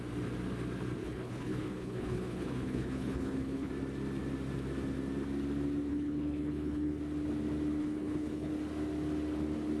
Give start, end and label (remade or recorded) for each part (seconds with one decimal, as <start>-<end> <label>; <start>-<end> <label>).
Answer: 0.0-1.0 recorded; 1.0-3.7 remade; 3.7-5.9 recorded; 5.9-7.0 remade; 7.0-7.8 recorded; 7.8-8.5 remade; 8.5-9.8 recorded